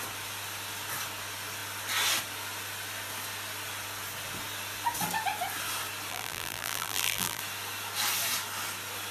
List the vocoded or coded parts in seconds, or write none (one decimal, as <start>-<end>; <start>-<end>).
6.1-7.4